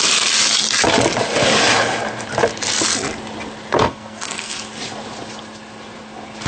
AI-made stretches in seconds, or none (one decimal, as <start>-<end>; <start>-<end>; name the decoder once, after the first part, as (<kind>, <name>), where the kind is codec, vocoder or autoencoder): 3.8-4.6 (codec, SNAC)